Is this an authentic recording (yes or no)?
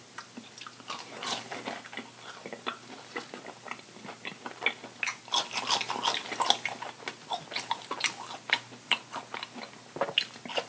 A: yes